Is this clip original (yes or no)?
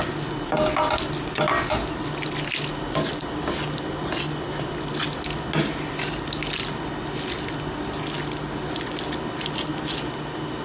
yes